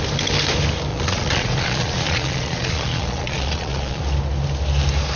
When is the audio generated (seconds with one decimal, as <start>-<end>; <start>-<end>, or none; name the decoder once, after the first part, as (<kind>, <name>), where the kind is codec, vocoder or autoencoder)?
0.9-4.0 (vocoder, Vocos)